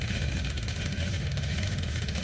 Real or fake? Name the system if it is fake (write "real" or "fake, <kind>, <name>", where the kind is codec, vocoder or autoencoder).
fake, autoencoder, DAC-VAE